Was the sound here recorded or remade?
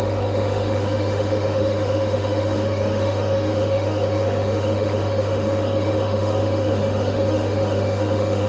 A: remade